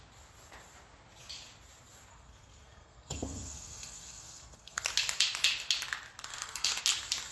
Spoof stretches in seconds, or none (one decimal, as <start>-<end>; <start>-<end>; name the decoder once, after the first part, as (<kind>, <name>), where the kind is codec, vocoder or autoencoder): 2.1-4.8 (codec, SNAC); 6.3-6.8